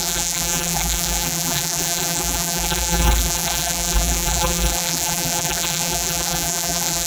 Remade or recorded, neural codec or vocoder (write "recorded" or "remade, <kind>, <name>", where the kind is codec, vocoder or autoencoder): remade, vocoder, BigVGAN v2